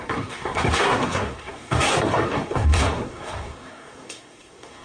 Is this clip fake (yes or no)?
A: yes